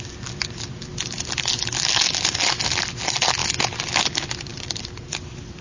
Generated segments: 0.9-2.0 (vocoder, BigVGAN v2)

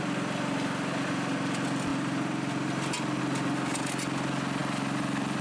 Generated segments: none

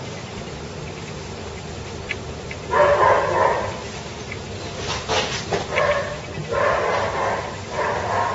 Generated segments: none